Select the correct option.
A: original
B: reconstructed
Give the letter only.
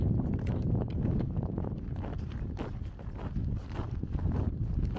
A